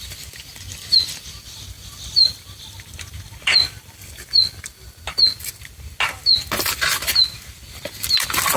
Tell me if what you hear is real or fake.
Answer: real